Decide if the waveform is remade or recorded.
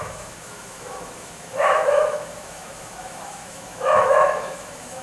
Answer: remade